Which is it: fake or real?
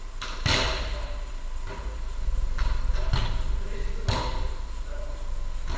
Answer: real